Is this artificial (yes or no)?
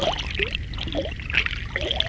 no